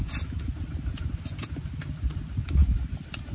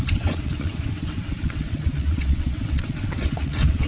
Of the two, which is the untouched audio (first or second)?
first